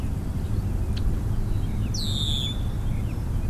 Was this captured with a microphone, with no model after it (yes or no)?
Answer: yes